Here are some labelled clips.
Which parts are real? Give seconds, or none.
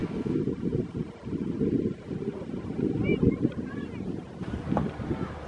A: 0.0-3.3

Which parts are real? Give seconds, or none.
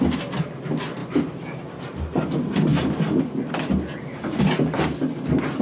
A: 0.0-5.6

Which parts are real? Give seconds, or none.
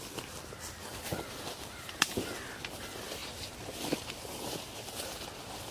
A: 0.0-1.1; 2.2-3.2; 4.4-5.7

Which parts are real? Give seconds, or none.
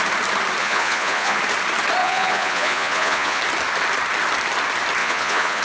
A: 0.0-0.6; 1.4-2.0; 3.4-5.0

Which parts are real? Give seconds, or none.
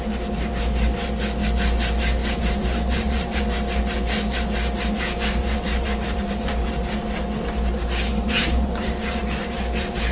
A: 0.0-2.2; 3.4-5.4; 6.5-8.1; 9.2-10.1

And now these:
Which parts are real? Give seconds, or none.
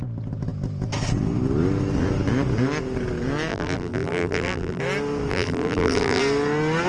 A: 0.0-3.5; 4.8-5.3; 6.2-6.9